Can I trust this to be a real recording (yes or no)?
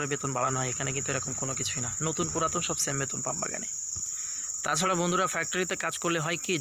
no